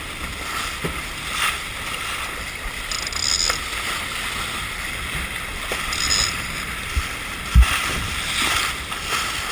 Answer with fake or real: real